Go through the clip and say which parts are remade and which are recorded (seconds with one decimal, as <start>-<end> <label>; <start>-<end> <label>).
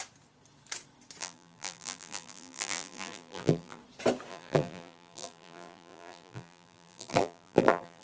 0.0-1.2 recorded; 1.2-3.8 remade; 3.8-4.3 recorded; 4.3-8.0 remade